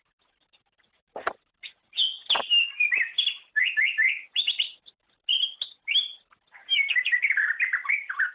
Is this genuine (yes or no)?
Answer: yes